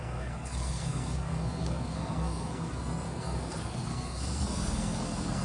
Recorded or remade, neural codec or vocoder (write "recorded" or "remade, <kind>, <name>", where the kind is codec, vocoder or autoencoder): remade, codec, SNAC